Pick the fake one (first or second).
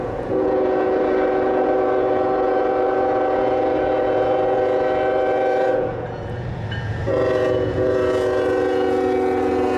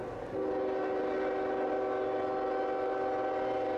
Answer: first